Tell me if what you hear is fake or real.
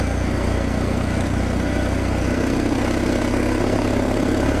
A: fake